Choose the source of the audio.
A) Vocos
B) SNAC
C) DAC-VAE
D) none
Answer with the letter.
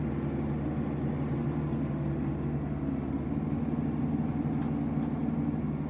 D